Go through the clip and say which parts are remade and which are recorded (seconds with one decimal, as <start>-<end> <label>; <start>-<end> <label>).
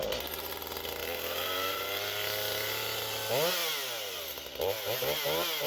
0.0-1.0 recorded; 1.0-1.8 remade; 1.8-5.7 recorded